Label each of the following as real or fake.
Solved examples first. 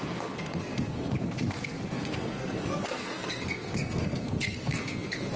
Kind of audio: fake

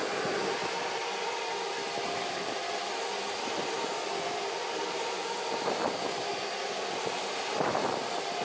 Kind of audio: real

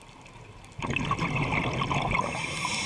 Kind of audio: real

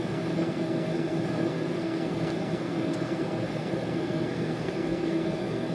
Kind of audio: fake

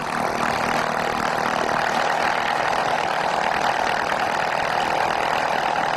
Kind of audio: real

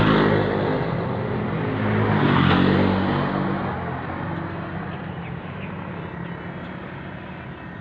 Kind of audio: real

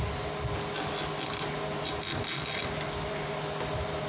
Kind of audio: real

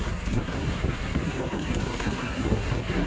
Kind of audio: fake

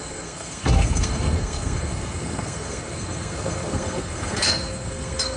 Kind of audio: fake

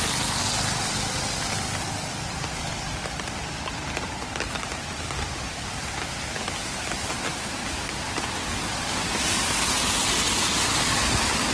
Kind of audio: real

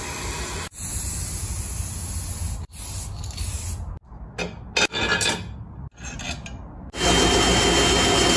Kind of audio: real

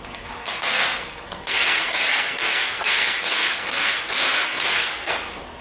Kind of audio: fake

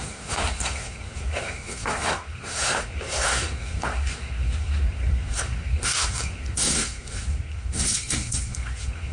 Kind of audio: fake